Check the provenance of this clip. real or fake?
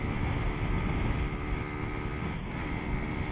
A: real